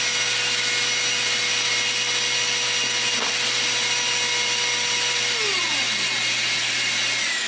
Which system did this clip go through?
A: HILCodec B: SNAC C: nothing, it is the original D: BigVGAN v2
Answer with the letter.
C